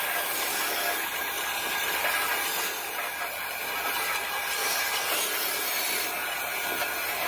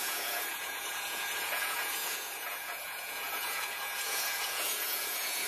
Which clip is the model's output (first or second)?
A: second